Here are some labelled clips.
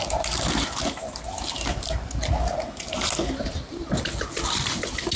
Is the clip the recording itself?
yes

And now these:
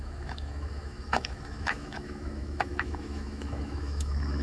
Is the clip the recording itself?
no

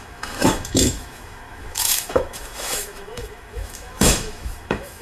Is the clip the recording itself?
no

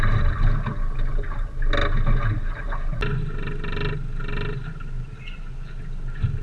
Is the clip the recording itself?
yes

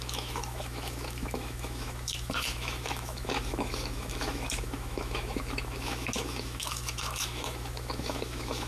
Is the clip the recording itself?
no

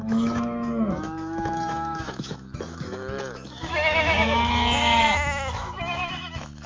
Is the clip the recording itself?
no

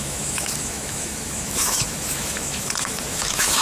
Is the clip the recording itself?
no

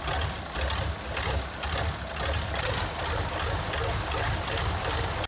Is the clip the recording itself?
yes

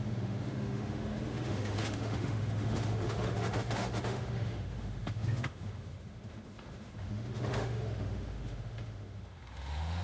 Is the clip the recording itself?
no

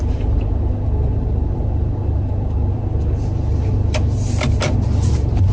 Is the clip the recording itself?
yes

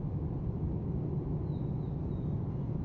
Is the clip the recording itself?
yes